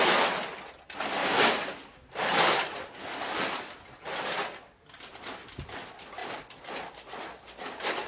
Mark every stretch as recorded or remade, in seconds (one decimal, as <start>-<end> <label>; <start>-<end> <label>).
0.0-8.1 recorded